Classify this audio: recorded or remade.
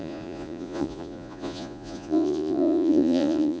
remade